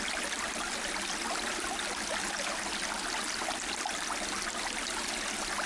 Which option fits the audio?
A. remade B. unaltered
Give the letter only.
B